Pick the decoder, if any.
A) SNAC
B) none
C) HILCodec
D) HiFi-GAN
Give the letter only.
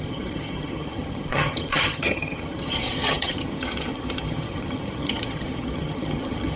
D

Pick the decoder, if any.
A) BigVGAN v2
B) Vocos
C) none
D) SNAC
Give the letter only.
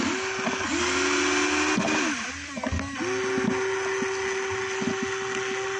C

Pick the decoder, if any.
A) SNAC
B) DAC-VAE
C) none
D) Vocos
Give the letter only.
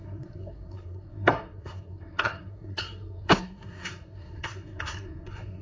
A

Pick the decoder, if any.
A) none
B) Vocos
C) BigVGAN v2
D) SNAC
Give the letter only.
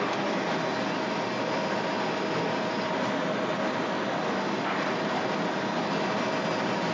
A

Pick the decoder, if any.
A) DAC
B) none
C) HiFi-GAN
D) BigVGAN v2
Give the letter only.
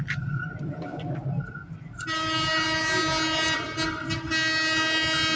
B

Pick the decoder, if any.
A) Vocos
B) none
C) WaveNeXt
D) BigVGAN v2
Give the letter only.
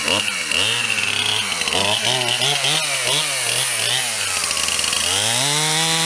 B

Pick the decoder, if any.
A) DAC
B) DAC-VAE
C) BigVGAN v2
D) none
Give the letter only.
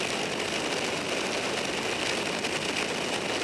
D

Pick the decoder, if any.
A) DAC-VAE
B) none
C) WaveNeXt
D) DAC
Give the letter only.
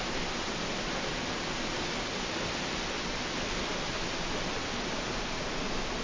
B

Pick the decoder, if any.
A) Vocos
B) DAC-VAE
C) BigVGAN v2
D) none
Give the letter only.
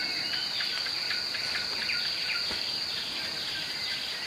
D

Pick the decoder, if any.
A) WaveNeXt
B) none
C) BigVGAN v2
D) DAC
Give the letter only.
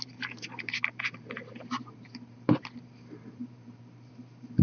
C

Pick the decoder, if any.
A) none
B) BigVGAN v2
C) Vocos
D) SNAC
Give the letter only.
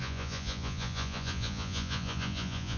C